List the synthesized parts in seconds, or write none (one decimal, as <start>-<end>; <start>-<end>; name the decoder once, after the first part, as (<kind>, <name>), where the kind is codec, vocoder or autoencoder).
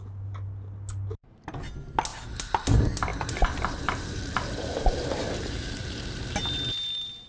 3.1-5.6 (vocoder, BigVGAN v2)